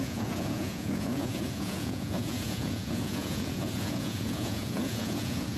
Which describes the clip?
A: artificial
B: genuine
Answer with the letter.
A